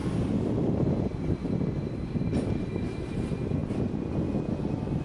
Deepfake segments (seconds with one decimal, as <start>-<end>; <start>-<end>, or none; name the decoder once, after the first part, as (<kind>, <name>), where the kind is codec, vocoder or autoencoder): none